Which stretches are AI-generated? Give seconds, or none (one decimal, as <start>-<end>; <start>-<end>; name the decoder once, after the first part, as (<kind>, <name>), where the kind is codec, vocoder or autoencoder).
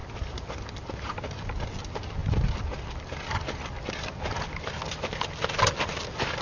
none